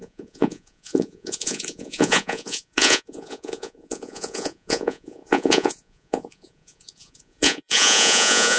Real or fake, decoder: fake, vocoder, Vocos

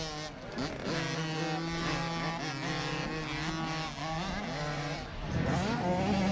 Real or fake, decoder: real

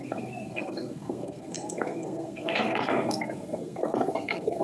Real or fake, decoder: fake, codec, SNAC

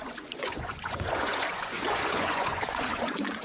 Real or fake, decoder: fake, vocoder, Vocos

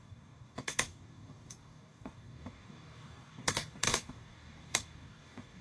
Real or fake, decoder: fake, codec, DAC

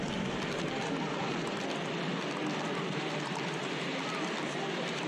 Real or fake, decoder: fake, vocoder, BigVGAN v2